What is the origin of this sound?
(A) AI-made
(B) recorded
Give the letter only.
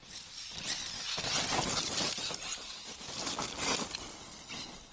B